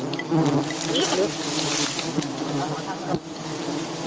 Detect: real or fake real